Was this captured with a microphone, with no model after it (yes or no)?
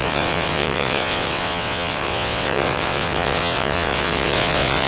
no